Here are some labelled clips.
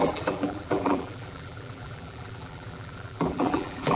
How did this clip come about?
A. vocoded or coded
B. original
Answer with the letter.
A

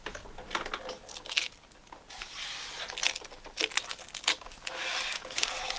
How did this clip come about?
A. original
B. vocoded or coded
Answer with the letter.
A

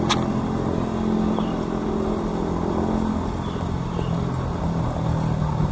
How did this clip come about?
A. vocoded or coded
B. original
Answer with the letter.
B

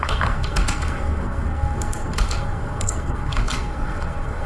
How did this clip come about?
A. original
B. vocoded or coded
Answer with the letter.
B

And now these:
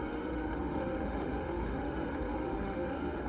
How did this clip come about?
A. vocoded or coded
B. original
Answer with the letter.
A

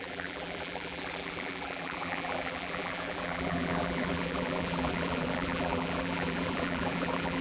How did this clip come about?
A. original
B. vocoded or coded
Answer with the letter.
B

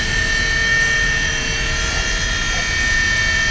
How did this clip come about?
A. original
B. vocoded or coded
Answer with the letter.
A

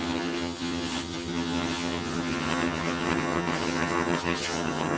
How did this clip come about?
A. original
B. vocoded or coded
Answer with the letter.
B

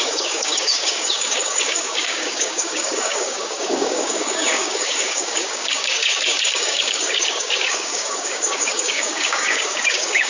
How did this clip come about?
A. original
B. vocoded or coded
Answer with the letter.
B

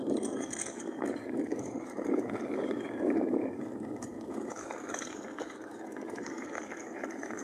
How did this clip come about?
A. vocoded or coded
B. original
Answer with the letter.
A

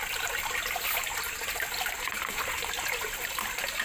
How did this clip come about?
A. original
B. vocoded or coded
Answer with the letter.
A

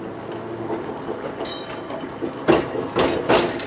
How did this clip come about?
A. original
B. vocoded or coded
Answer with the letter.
A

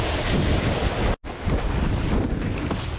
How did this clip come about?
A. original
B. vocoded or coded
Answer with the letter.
A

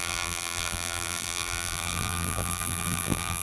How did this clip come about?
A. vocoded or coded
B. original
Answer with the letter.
A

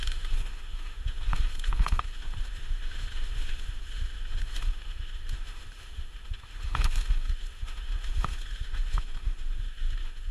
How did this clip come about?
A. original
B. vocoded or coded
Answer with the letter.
B